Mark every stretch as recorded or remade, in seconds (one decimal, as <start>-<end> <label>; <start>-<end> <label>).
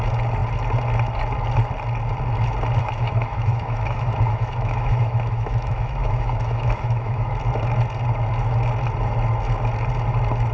0.0-2.8 recorded; 2.8-7.3 remade; 7.3-10.5 recorded